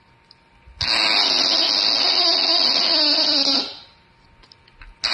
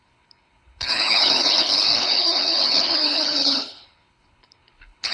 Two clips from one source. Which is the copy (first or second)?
second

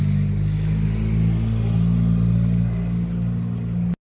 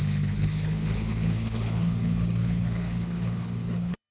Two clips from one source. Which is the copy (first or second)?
second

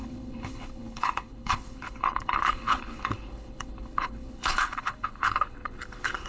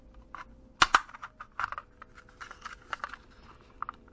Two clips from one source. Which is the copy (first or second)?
first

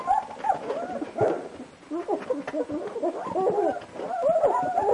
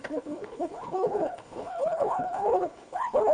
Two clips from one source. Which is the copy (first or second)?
second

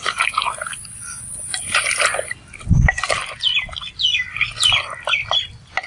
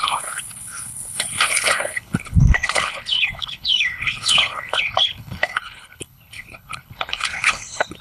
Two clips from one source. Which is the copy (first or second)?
second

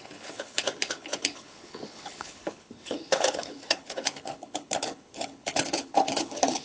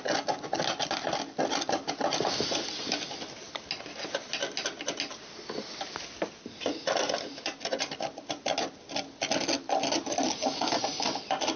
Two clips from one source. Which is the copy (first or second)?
first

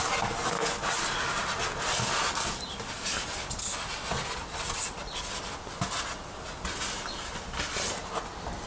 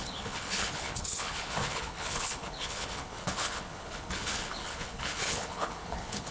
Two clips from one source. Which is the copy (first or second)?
second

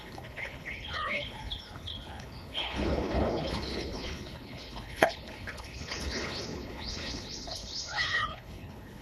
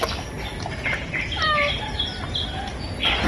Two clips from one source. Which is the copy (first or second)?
first